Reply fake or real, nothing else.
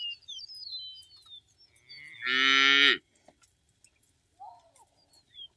real